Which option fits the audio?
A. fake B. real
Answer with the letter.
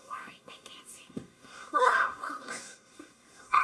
A